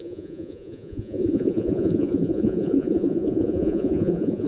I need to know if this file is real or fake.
fake